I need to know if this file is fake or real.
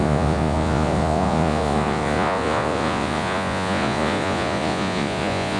fake